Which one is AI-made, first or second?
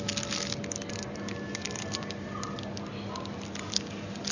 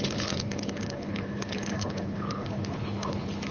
second